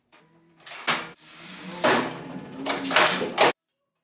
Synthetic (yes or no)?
no